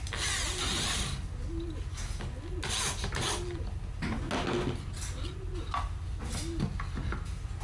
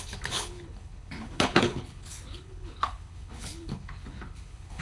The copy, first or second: second